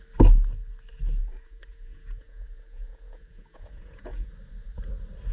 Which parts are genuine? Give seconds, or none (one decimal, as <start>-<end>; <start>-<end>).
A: 0.0-1.2; 4.3-5.3